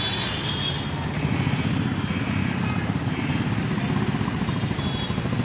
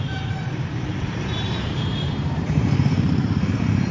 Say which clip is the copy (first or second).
second